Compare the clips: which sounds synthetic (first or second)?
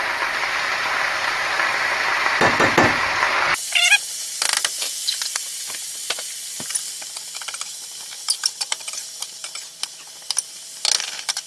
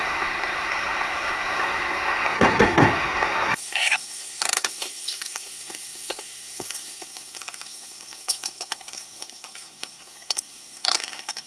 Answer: second